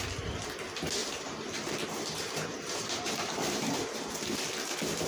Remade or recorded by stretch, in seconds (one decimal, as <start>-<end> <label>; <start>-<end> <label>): 0.0-1.0 recorded; 1.0-4.1 remade; 4.1-5.1 recorded